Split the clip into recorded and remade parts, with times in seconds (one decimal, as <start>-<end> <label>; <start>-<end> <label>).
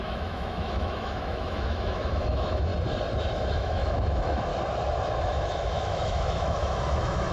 0.0-2.7 remade; 2.7-3.2 recorded; 3.2-4.5 remade; 4.5-5.2 recorded; 5.2-7.3 remade